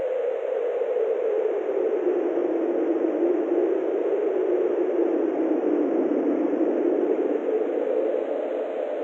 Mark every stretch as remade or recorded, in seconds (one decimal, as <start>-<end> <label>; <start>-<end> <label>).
0.0-9.0 recorded